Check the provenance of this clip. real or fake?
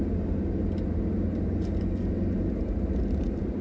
real